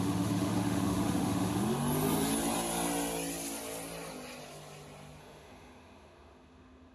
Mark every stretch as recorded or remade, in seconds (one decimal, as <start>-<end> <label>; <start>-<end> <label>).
0.0-1.8 remade; 1.8-5.2 recorded; 5.2-6.9 remade